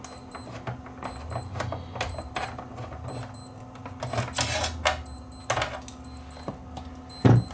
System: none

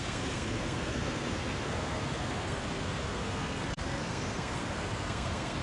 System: codec, SNAC